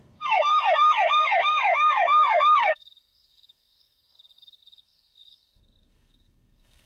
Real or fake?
fake